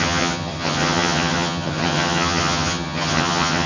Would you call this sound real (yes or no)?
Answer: no